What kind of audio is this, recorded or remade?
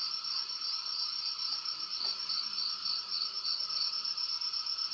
recorded